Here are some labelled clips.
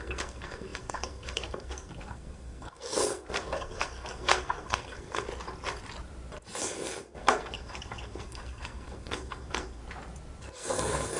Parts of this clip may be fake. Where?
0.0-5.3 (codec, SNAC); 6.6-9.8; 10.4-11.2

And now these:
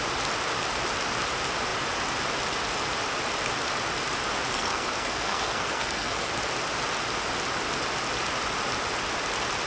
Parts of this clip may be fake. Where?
4.5-6.3 (codec, SNAC)

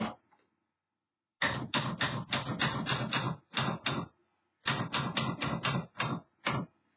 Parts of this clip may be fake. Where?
none

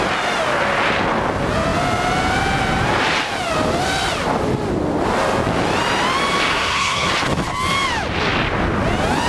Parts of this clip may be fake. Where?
6.5-7.1 (codec, SNAC)

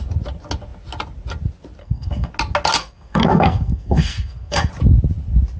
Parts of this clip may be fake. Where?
1.8-2.3 (codec, SNAC); 2.8-4.7